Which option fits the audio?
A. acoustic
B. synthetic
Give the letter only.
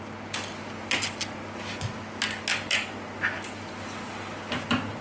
A